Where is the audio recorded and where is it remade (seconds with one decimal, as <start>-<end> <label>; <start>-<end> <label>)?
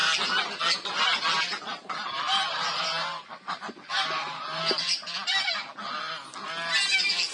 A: 0.0-1.7 recorded; 1.7-2.8 remade; 2.8-7.3 recorded